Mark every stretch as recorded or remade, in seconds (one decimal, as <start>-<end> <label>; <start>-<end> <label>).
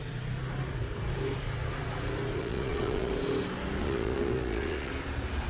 0.0-2.4 recorded; 2.4-3.1 remade; 3.1-3.8 recorded; 3.8-4.9 remade; 4.9-5.5 recorded